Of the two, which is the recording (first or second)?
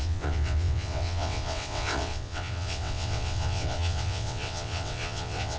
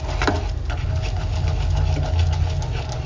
second